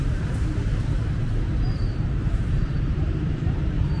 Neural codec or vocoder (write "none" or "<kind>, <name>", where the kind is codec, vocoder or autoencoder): vocoder, BigVGAN v2